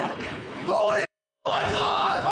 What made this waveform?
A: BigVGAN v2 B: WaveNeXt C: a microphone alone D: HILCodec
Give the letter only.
D